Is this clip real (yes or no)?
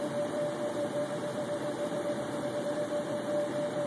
no